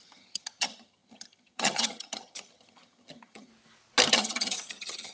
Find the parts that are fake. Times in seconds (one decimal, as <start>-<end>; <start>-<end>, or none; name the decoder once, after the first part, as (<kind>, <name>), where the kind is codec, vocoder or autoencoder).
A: 0.0-3.5 (vocoder, HiFi-GAN); 4.1-5.1